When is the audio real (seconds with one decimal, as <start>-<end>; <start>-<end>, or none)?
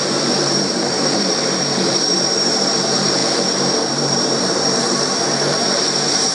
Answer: none